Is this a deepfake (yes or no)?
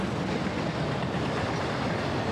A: no